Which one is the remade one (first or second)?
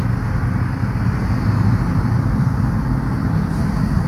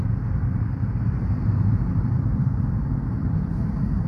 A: second